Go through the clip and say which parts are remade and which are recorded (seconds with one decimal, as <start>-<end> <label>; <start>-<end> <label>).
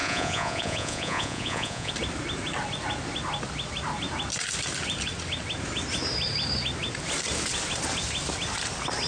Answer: 0.0-1.9 remade; 1.9-9.1 recorded